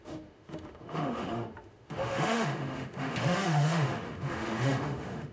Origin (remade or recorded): remade